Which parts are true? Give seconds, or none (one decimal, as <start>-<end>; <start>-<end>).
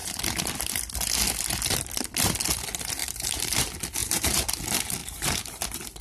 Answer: 0.0-3.0; 3.6-4.0; 4.6-5.0